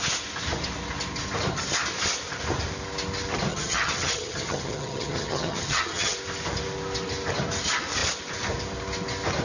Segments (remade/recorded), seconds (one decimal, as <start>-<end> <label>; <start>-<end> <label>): 0.0-3.5 recorded; 3.5-6.1 remade; 6.1-9.4 recorded